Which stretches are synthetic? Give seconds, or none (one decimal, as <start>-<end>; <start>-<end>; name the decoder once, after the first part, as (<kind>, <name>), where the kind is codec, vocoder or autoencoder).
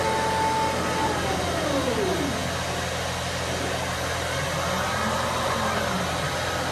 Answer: none